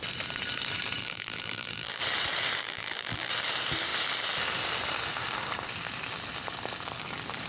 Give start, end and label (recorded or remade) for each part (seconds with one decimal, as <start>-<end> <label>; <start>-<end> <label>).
0.0-1.0 recorded; 1.0-2.0 remade; 2.0-2.6 recorded; 2.6-3.3 remade; 3.3-7.5 recorded